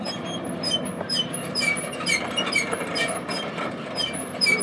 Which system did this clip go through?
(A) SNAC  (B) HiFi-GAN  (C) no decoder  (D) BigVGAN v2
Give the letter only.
D